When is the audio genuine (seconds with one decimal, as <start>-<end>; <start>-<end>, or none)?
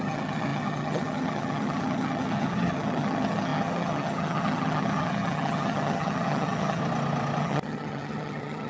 6.8-7.4